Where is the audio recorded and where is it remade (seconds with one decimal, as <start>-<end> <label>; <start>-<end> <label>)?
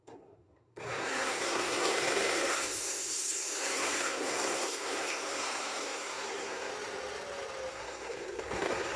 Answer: 0.0-6.7 remade; 6.7-7.7 recorded; 7.7-9.0 remade